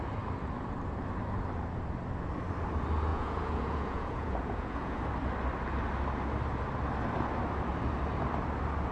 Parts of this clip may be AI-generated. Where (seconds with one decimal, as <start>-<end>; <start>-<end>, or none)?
3.1-5.0